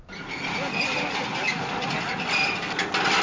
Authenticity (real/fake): real